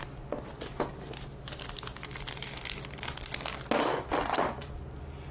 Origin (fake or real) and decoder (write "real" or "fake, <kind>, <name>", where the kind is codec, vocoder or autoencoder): real